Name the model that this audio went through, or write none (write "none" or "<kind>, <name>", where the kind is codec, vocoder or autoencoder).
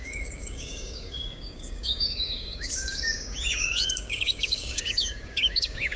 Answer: codec, DAC